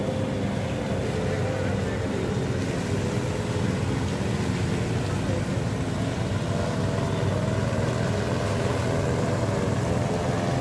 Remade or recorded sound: recorded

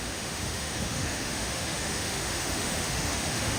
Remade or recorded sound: remade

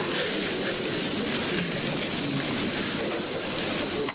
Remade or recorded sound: recorded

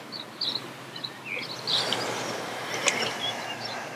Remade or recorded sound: recorded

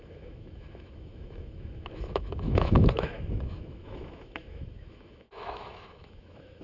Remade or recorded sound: remade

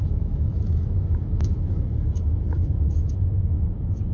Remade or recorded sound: remade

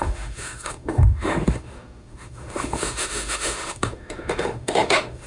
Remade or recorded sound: remade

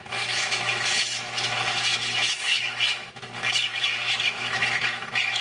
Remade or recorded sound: remade